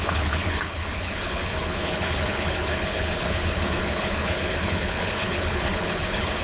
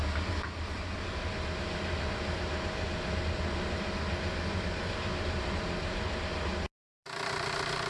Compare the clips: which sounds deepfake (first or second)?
first